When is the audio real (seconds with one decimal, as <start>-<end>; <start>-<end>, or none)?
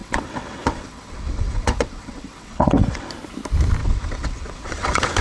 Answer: 3.1-3.8